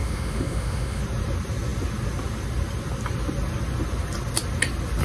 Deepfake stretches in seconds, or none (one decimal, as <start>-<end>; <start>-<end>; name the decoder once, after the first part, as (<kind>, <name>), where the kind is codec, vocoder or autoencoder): 0.0-1.0 (autoencoder, DAC-VAE)